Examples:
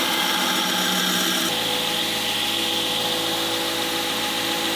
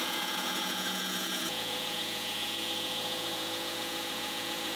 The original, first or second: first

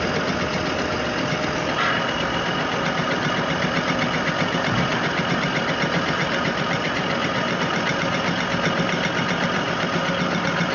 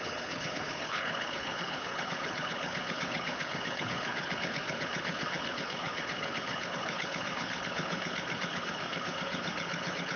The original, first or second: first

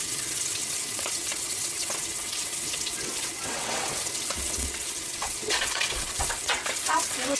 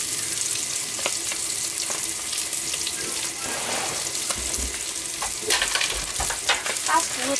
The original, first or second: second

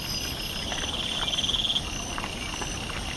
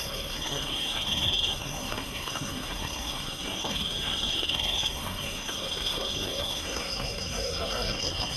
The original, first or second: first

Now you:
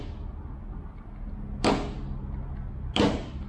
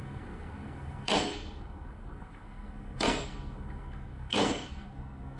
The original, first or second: first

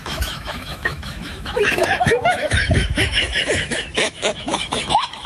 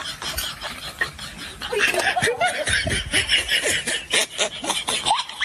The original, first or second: second